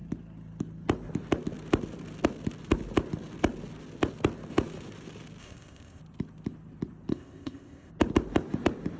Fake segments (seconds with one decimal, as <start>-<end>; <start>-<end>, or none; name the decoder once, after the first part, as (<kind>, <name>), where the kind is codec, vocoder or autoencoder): 5.4-6.0 (codec, ZipCodec); 7.1-7.9